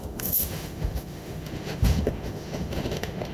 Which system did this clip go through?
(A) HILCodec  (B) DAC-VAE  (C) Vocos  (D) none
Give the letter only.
B